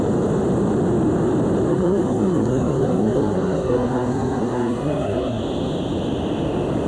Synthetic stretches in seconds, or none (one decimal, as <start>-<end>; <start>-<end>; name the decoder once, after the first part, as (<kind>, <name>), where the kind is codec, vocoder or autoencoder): 1.7-5.4 (codec, SNAC)